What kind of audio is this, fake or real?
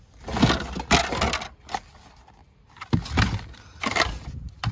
real